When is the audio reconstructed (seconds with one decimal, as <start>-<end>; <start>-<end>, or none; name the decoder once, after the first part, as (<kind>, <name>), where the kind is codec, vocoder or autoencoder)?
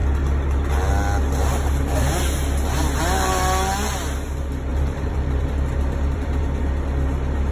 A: 4.7-6.4 (vocoder, BigVGAN v2)